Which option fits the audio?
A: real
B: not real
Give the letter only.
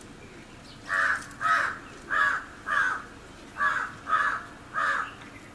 A